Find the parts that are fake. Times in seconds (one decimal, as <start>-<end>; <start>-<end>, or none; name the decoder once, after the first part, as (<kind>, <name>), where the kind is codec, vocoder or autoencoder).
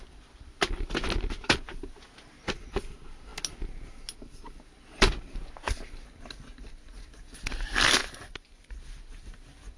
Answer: 8.0-8.8 (vocoder, Vocos)